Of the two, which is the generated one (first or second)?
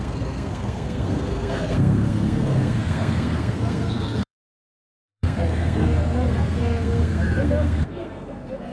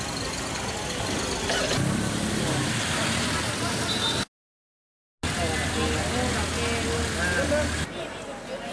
first